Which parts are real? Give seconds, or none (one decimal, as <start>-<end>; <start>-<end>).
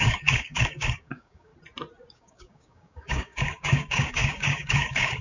1.5-2.1